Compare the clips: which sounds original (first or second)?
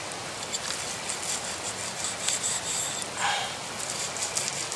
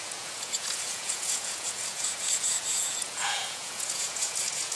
first